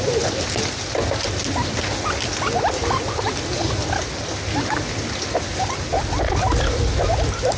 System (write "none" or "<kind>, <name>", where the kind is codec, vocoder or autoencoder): none